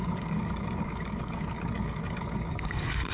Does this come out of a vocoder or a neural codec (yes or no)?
yes